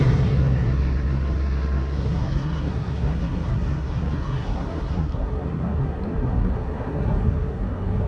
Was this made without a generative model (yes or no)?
no